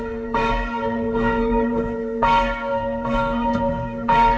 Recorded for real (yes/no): no